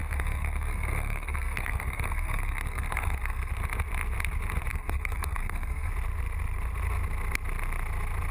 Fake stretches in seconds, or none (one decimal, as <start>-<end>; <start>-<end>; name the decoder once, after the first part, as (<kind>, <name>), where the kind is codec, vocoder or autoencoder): 0.0-3.5 (codec, SNAC); 4.7-5.9